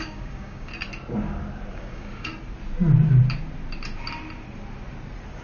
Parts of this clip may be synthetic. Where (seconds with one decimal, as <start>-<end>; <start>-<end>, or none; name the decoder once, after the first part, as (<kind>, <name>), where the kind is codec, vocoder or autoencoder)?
0.0-0.7 (codec, DAC); 1.7-2.3